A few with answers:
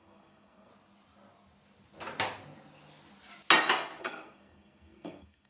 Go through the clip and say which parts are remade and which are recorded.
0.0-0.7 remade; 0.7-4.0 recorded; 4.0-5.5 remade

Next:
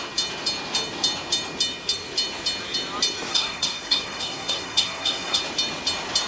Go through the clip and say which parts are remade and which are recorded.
0.0-3.3 recorded; 3.3-5.4 remade; 5.4-6.3 recorded

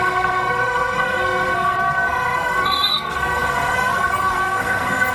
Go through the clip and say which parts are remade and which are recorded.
0.0-5.1 remade